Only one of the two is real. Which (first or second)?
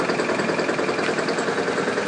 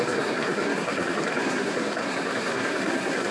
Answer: first